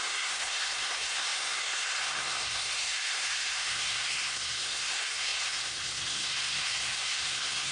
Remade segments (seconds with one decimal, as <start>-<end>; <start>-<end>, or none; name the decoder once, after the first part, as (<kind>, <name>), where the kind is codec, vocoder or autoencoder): 0.0-7.7 (codec, SNAC)